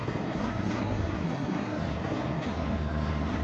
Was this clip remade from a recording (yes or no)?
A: yes